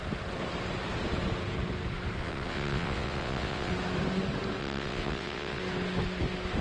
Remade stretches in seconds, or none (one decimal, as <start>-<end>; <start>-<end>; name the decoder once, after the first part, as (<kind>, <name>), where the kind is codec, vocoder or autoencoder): 2.2-3.7 (vocoder, WaveNeXt); 4.6-5.6